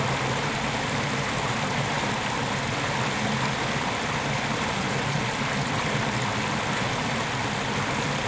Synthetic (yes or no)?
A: no